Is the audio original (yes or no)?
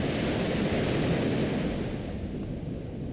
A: yes